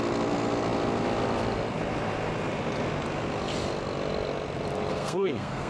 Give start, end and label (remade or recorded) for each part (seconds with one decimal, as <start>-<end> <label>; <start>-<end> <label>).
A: 0.0-4.9 recorded; 4.9-5.7 remade